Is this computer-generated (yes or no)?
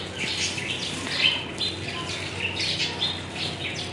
no